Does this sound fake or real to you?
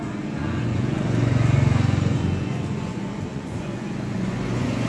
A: fake